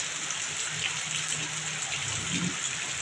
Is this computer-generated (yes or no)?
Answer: no